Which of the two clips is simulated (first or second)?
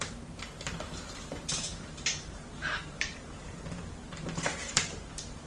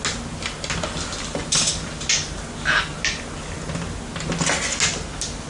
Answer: first